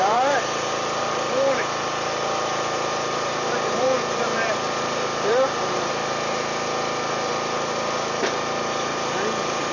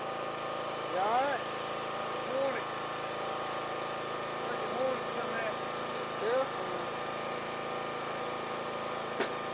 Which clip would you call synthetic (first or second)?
first